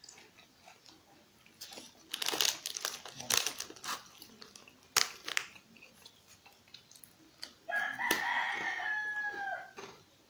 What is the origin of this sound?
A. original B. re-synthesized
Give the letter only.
A